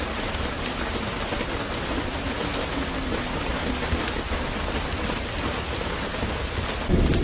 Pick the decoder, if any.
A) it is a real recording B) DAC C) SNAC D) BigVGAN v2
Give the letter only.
A